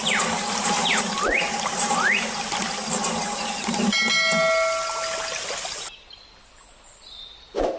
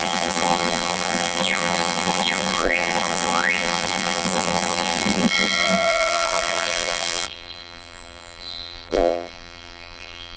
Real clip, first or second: first